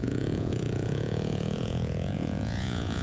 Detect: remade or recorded remade